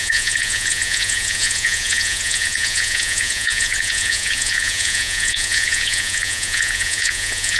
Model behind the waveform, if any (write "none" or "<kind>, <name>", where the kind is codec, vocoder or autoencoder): vocoder, Vocos